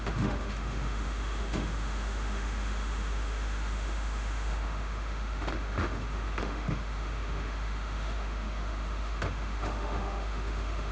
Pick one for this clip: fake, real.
fake